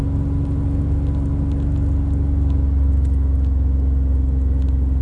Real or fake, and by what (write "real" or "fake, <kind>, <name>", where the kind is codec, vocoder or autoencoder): real